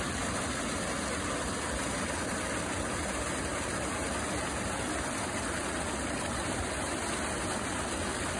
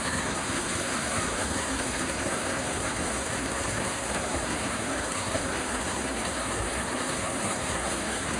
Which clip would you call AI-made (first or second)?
second